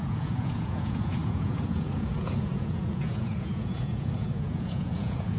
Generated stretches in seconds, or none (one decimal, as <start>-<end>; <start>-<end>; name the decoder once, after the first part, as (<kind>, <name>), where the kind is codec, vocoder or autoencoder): 0.0-5.4 (vocoder, Vocos)